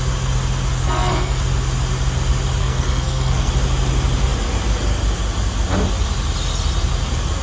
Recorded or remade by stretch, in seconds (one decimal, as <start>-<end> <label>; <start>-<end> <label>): 0.0-0.8 recorded; 0.8-1.4 remade; 1.4-2.6 recorded; 2.6-3.5 remade; 3.5-7.4 recorded